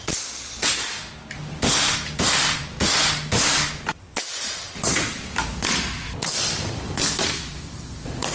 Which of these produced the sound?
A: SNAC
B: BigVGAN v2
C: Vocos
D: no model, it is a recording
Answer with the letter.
B